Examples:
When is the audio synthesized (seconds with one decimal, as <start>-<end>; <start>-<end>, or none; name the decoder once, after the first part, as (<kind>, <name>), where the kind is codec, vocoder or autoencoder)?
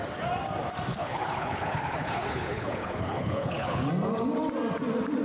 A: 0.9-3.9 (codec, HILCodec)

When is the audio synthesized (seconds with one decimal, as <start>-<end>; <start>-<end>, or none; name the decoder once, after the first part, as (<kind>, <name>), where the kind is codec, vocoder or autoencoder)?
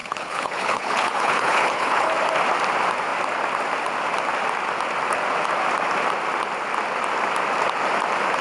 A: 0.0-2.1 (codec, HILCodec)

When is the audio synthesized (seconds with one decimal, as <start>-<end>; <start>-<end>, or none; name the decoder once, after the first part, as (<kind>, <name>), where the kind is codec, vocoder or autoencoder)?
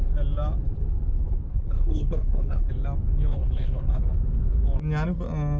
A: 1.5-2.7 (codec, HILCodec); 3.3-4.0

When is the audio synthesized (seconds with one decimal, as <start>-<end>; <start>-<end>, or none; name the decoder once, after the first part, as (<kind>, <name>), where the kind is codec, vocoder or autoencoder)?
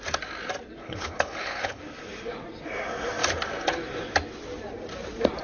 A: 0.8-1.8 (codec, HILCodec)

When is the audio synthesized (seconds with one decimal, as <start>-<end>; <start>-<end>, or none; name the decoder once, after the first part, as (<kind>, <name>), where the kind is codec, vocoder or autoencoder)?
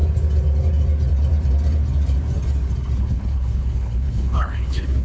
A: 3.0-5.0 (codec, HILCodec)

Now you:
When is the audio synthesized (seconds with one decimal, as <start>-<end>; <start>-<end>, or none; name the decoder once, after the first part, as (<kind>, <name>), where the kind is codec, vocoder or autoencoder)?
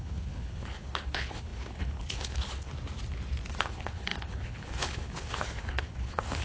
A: 0.0-2.7 (codec, HILCodec); 3.6-6.4